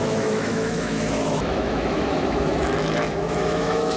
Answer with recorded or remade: remade